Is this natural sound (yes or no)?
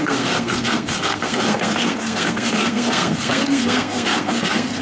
no